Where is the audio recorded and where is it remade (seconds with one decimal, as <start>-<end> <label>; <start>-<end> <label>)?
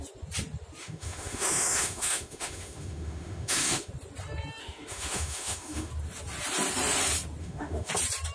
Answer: 0.0-0.8 recorded; 0.8-3.9 remade; 3.9-4.6 recorded; 4.6-5.9 remade; 5.9-7.4 recorded; 7.4-7.9 remade; 7.9-8.3 recorded